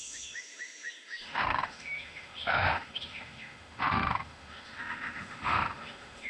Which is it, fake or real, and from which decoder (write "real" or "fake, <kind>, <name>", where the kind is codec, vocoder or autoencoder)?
fake, autoencoder, DAC-VAE